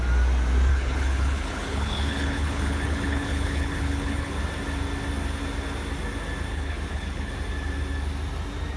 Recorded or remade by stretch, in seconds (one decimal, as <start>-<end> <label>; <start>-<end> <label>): 0.0-0.7 recorded; 0.7-4.4 remade; 4.4-6.5 recorded; 6.5-7.3 remade; 7.3-8.8 recorded